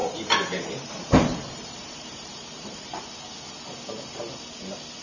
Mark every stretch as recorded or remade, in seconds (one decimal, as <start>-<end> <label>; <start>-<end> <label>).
0.0-3.0 remade; 3.0-5.0 recorded